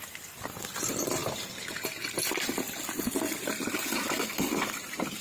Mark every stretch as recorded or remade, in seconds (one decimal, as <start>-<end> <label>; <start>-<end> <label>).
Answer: 0.0-5.2 recorded

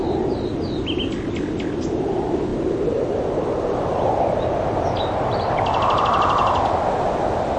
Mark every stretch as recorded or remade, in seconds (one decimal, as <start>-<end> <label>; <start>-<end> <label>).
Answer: 0.0-7.6 recorded

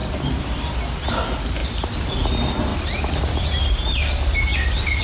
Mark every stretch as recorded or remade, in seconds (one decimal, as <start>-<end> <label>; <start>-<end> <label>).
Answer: 0.0-0.6 remade; 0.6-1.6 recorded; 1.6-2.1 remade; 2.1-2.7 recorded; 2.7-3.7 remade; 3.7-5.0 recorded

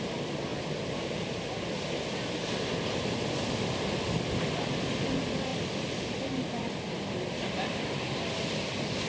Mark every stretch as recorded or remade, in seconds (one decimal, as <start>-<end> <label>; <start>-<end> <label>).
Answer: 0.0-0.5 recorded; 0.5-3.8 remade; 3.8-5.5 recorded; 5.5-6.1 remade; 6.1-9.1 recorded